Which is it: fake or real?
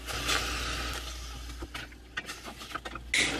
real